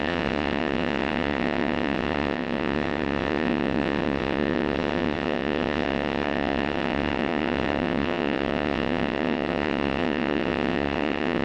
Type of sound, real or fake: fake